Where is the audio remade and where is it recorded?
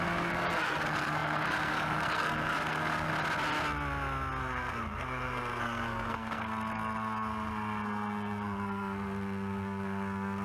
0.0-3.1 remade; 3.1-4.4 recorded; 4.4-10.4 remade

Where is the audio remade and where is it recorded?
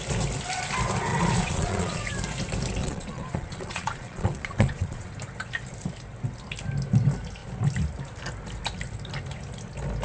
0.0-1.1 recorded; 1.1-2.0 remade; 2.0-2.8 recorded; 2.8-5.1 remade; 5.1-10.0 recorded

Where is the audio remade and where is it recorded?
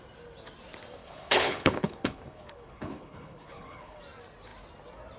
0.0-1.0 recorded; 1.0-4.0 remade; 4.0-5.2 recorded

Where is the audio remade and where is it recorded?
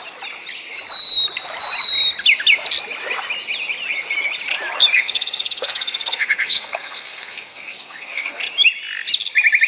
0.0-4.9 recorded; 4.9-8.4 remade; 8.4-9.7 recorded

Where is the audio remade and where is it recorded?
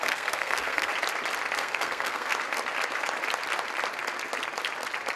0.0-0.9 remade; 0.9-1.6 recorded; 1.6-2.3 remade; 2.3-5.2 recorded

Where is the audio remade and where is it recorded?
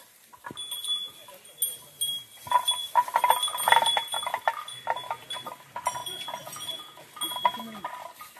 0.0-6.0 recorded; 6.0-7.0 remade; 7.0-8.4 recorded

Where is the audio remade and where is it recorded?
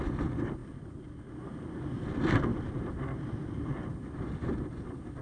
0.0-5.2 recorded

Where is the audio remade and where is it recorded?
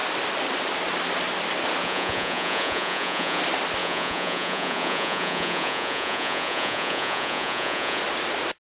0.0-1.8 recorded; 1.8-3.4 remade; 3.4-3.8 recorded; 3.8-8.0 remade; 8.0-8.6 recorded